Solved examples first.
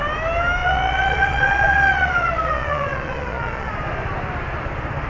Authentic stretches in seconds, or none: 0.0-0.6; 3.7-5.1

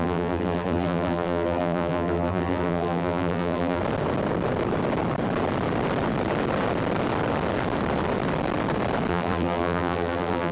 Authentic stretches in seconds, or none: 3.8-9.1

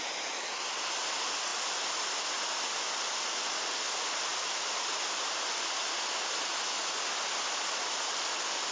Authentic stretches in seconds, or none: 0.0-1.5; 2.1-4.3; 5.9-8.7

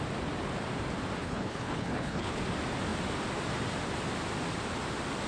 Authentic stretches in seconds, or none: 0.0-1.2; 2.4-5.3

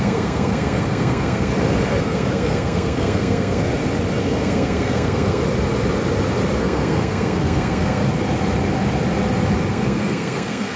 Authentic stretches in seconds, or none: 1.5-2.0; 3.7-4.2; 5.4-6.6; 8.0-9.7

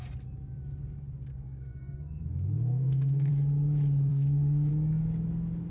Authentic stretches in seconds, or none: 0.0-1.3; 3.3-4.1; 4.7-5.7